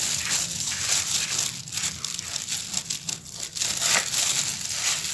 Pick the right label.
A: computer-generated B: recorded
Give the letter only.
B